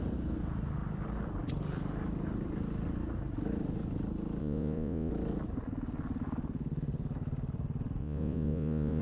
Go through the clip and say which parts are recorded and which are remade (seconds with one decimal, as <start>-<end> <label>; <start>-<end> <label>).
0.0-4.4 recorded; 4.4-5.1 remade; 5.1-8.0 recorded; 8.0-9.0 remade